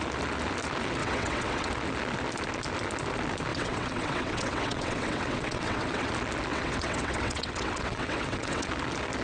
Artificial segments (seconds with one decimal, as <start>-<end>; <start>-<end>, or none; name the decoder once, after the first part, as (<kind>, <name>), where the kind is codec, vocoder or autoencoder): 1.0-1.7 (vocoder, WaveNeXt); 3.5-6.1; 6.5-8.7